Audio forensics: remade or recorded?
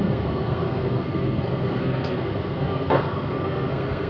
remade